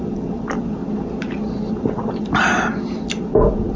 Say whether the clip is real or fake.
real